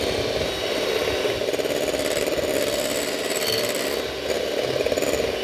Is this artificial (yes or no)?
no